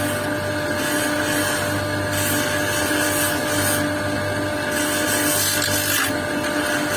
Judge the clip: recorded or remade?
recorded